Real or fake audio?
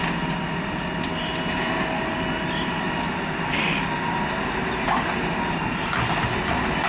real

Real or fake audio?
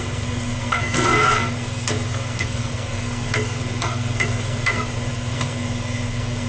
fake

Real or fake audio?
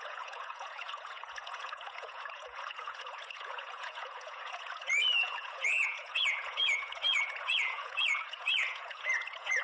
fake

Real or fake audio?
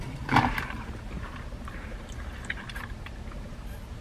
fake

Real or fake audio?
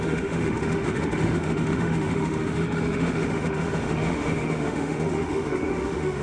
fake